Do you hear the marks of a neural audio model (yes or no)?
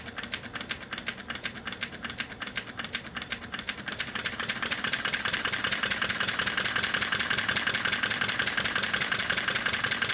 yes